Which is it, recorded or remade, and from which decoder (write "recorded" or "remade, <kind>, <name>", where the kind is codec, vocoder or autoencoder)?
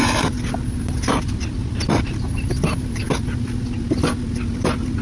recorded